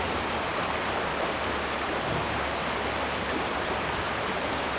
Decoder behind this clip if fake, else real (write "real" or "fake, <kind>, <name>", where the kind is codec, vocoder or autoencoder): real